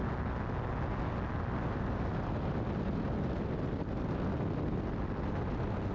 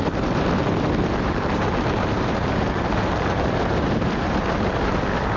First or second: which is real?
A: first